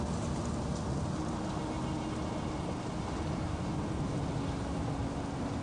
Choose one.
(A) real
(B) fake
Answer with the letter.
A